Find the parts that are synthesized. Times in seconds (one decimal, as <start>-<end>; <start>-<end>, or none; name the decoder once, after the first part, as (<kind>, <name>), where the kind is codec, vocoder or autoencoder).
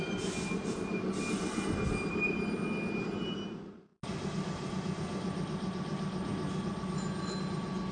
none